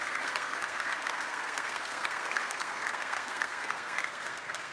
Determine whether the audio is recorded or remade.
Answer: remade